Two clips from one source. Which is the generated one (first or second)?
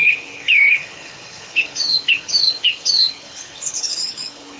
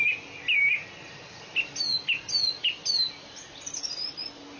first